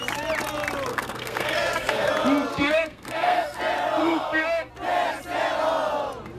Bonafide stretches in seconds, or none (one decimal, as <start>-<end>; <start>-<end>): 0.0-0.9; 2.1-2.5; 3.6-4.0; 4.7-6.4